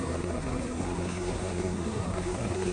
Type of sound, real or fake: fake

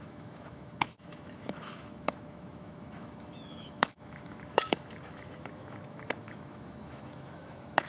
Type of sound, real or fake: fake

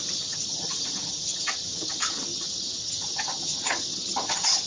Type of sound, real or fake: fake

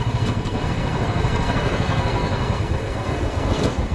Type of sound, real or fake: fake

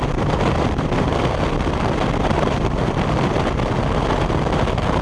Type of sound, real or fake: fake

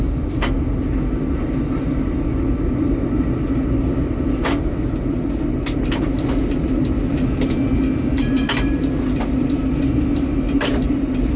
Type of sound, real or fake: real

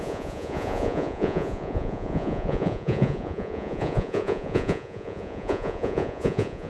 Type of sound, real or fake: fake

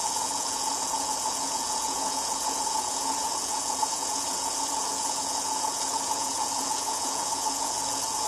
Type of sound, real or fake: fake